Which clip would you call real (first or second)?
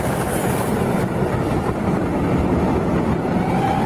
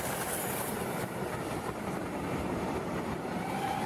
first